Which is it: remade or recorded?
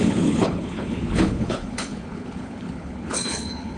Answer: remade